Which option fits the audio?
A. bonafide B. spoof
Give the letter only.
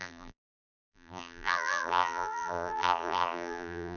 B